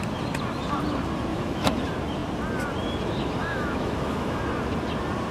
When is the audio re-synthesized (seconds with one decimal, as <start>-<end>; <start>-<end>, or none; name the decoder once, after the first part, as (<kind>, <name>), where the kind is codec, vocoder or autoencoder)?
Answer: 1.3-1.8 (autoencoder, DAC-VAE); 3.4-4.4